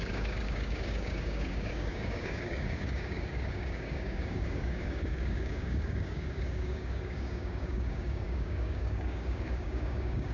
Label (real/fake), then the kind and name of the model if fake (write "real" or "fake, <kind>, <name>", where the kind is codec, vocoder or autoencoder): fake, codec, DAC